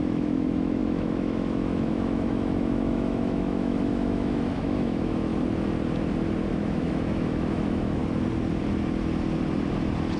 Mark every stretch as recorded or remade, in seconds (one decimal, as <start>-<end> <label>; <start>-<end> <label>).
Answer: 0.0-5.3 remade; 5.3-6.5 recorded; 6.5-8.0 remade; 8.0-10.2 recorded